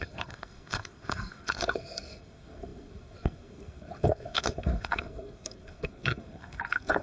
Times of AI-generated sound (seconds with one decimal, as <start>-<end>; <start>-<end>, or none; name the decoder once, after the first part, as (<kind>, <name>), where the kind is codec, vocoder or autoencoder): 0.0-7.0 (codec, SNAC)